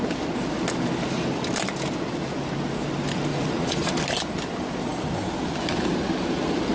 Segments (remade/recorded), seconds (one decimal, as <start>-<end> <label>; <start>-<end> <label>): 0.0-3.3 recorded; 3.3-3.9 remade; 3.9-6.7 recorded